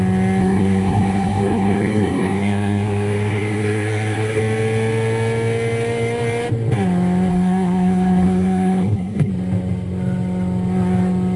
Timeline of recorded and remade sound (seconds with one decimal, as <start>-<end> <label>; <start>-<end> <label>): 0.0-0.4 recorded; 0.4-4.4 remade; 4.4-7.3 recorded; 7.3-9.3 remade; 9.3-11.4 recorded